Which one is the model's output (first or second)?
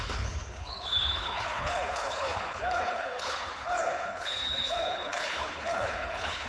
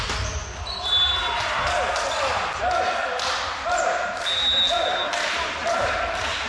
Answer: first